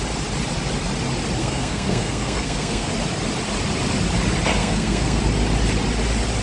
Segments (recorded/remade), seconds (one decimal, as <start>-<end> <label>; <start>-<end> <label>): 0.0-1.4 recorded; 1.4-2.9 remade; 2.9-4.6 recorded; 4.6-5.2 remade; 5.2-6.4 recorded